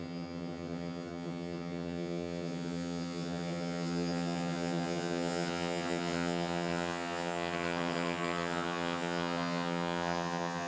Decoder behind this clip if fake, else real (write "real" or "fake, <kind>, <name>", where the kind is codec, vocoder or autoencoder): fake, vocoder, HiFi-GAN